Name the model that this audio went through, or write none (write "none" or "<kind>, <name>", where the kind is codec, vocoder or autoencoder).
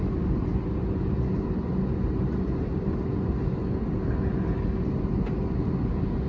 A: none